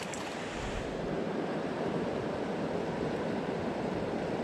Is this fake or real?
real